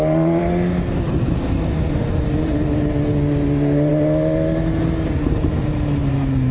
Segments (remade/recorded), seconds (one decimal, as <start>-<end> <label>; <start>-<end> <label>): 0.0-6.5 recorded